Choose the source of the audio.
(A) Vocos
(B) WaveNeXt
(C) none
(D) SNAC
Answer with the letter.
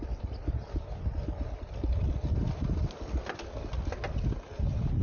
C